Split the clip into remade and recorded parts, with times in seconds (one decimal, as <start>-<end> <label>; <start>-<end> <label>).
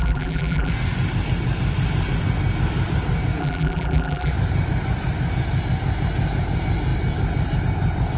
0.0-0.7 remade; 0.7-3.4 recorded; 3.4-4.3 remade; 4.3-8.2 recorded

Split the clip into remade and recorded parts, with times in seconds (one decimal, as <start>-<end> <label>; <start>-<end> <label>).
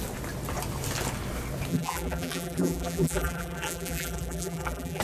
0.0-1.7 recorded; 1.7-5.0 remade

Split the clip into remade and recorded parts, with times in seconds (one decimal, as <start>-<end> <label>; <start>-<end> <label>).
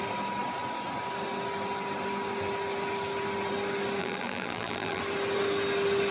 0.0-4.0 recorded; 4.0-5.0 remade; 5.0-6.1 recorded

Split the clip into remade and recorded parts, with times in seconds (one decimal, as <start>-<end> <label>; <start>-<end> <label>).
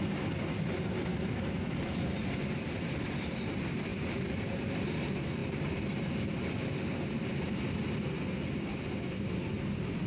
0.0-1.1 recorded; 1.1-2.2 remade; 2.2-3.9 recorded; 3.9-4.7 remade; 4.7-5.4 recorded; 5.4-7.9 remade; 7.9-10.1 recorded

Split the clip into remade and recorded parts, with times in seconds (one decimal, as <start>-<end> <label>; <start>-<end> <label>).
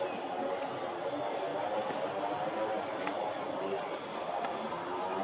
0.0-5.2 recorded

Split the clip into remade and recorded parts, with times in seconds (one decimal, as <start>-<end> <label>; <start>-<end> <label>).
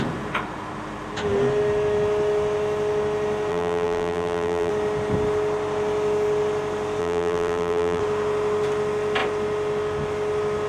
0.0-3.5 recorded; 3.5-4.7 remade; 4.7-7.0 recorded; 7.0-8.0 remade; 8.0-10.7 recorded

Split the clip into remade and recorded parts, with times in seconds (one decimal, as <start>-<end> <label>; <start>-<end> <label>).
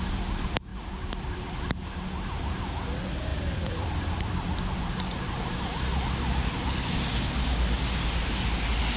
0.0-0.7 recorded; 0.7-1.7 remade; 1.7-3.3 recorded; 3.3-4.3 remade; 4.3-9.0 recorded